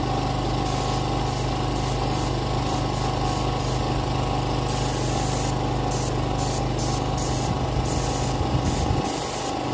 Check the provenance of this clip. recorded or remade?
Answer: recorded